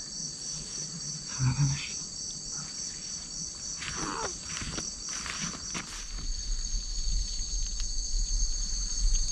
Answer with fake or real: real